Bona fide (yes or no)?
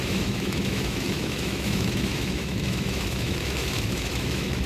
no